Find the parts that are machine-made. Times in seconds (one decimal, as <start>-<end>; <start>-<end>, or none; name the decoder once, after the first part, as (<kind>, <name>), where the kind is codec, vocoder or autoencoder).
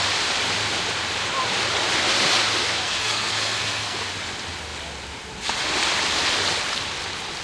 2.6-4.1 (codec, SNAC)